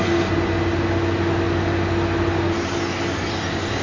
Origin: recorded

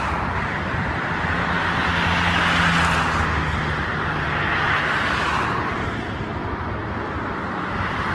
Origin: recorded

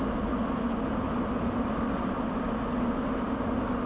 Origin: recorded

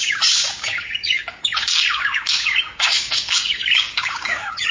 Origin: remade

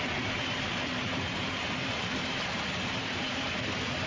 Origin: remade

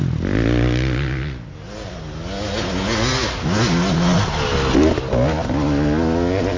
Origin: recorded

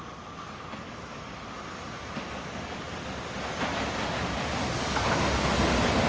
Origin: recorded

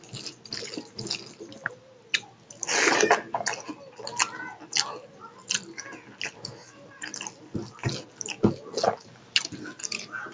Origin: recorded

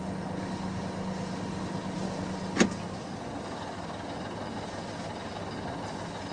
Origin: recorded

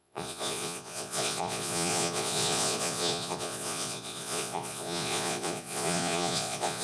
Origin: remade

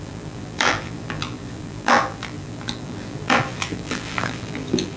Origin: remade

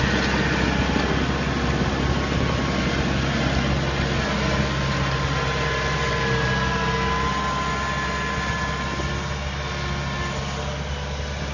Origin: recorded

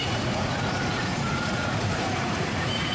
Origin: remade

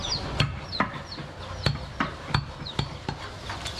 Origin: recorded